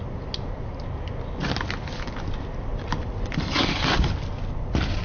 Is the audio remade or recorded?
recorded